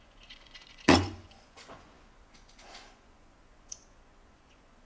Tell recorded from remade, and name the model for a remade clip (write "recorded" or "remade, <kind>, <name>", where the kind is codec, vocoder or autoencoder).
remade, vocoder, Vocos